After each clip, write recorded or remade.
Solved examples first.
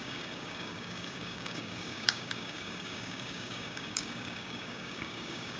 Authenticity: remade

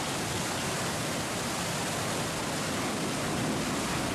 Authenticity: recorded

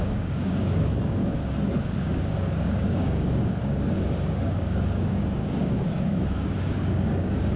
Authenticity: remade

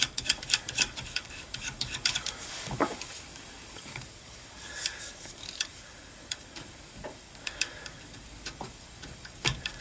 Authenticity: remade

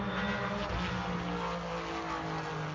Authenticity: recorded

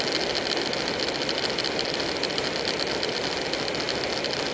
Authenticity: recorded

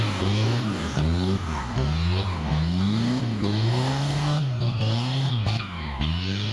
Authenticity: remade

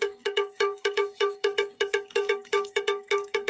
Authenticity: remade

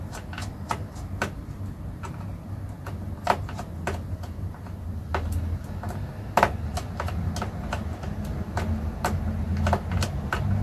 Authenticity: recorded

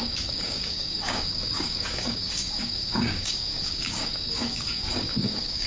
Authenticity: remade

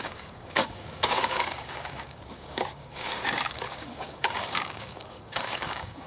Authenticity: remade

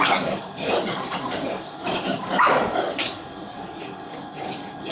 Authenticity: remade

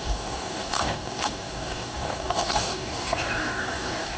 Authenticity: remade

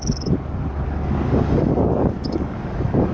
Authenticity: remade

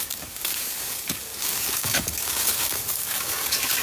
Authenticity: remade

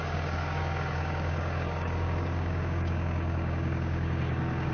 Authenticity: remade